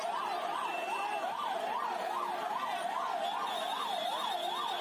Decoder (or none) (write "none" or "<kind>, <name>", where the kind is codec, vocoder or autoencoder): none